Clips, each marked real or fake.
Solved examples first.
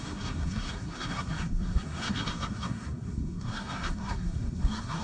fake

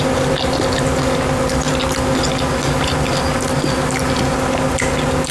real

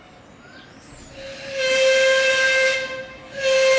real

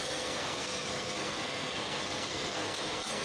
fake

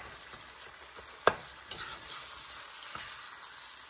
real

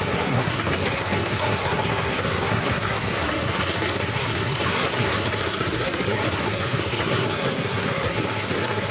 fake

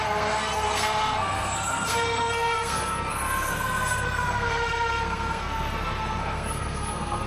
fake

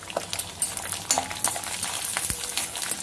real